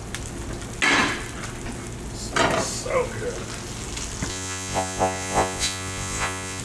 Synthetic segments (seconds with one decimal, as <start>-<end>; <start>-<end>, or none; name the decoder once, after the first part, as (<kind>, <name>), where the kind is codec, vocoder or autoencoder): 4.3-6.6 (vocoder, Vocos)